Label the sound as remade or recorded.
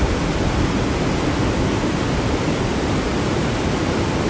recorded